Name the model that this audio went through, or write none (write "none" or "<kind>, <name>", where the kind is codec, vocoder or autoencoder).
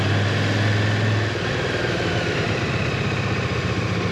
none